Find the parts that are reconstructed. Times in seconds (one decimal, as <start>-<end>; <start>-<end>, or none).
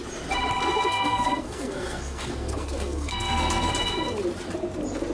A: 0.6-3.7